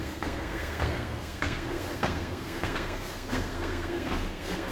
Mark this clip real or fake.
fake